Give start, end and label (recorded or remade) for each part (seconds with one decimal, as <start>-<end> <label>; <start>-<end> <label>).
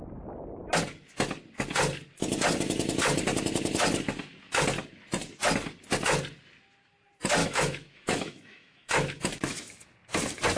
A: 0.0-7.4 recorded; 7.4-9.9 remade; 9.9-10.6 recorded